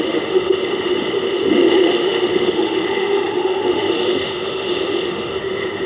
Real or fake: fake